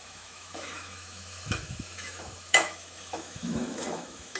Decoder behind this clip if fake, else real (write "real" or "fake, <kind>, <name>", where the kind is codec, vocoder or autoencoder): fake, autoencoder, DAC-VAE